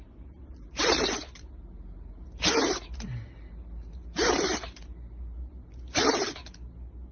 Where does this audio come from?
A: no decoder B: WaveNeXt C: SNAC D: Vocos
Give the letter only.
A